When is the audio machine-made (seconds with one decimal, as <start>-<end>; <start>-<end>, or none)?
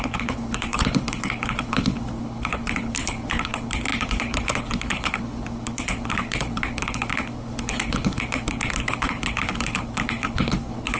0.0-11.0